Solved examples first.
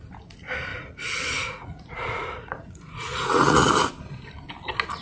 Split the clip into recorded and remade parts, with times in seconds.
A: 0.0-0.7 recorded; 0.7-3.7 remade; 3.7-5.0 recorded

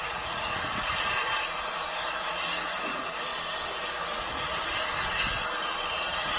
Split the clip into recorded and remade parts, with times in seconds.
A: 0.0-0.9 remade; 0.9-2.3 recorded; 2.3-3.3 remade; 3.3-5.9 recorded; 5.9-6.4 remade

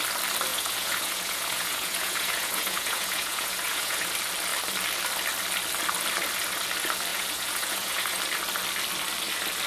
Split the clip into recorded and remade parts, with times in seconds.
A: 0.0-0.5 recorded; 0.5-4.1 remade; 4.1-7.1 recorded; 7.1-8.2 remade; 8.2-9.7 recorded

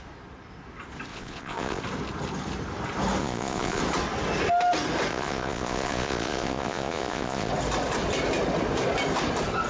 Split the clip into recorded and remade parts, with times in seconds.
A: 0.0-1.1 recorded; 1.1-1.8 remade; 1.8-3.2 recorded; 3.2-3.8 remade; 3.8-5.1 recorded; 5.1-7.5 remade; 7.5-9.7 recorded